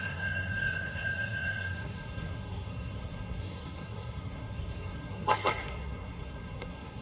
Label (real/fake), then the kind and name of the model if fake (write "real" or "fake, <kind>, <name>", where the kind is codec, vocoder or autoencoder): fake, codec, SNAC